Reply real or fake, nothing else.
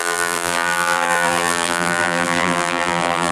fake